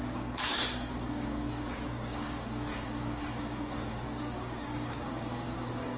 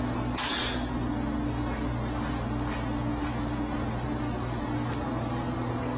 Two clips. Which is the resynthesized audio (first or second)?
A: first